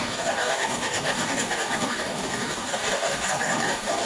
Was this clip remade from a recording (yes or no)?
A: yes